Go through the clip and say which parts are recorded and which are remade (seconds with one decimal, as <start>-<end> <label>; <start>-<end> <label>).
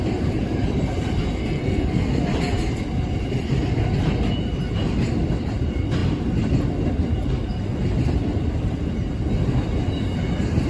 0.0-1.4 recorded; 1.4-2.1 remade; 2.1-10.7 recorded